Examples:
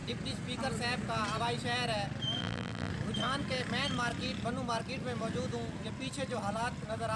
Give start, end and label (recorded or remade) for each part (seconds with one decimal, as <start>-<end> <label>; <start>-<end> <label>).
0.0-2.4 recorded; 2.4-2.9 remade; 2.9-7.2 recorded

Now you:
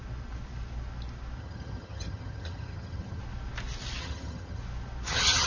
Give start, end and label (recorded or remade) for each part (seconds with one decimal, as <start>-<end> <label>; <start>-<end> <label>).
0.0-1.4 recorded; 1.4-3.2 remade; 3.2-4.0 recorded; 4.0-4.6 remade; 4.6-5.1 recorded; 5.1-5.5 remade

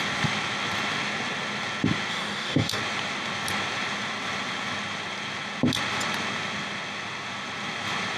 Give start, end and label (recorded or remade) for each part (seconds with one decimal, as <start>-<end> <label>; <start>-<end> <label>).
0.0-2.1 recorded; 2.1-2.8 remade; 2.8-8.2 recorded

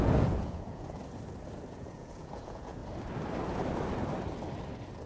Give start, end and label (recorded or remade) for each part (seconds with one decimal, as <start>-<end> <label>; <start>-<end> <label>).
0.0-1.0 remade; 1.0-1.6 recorded; 1.6-2.8 remade; 2.8-5.1 recorded